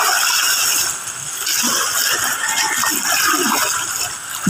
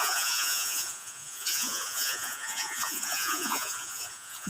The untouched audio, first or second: first